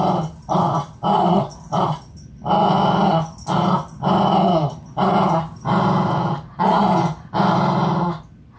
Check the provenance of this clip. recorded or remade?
recorded